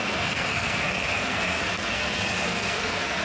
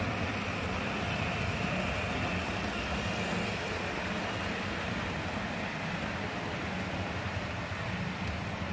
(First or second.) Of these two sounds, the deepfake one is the first